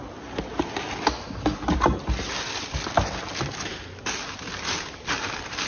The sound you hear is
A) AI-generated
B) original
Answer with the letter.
B